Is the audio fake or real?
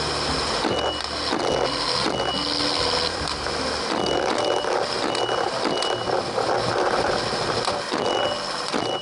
real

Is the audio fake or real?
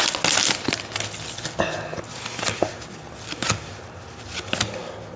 real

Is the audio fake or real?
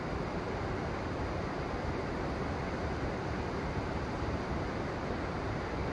real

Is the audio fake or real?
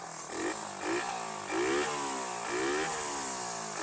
real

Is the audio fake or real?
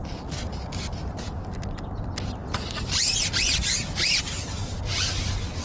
real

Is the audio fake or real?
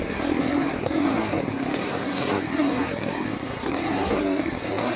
fake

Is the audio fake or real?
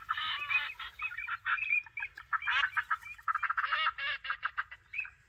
real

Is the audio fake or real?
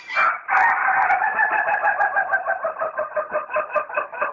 real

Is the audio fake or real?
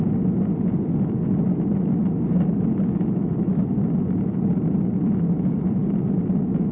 real